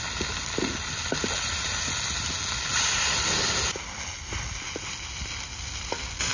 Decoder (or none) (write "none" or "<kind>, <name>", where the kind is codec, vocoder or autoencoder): none